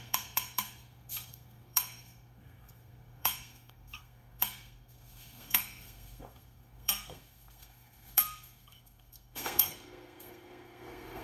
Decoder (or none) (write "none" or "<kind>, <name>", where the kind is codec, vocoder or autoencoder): codec, SNAC